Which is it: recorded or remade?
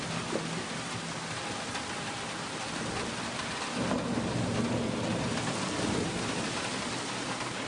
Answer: recorded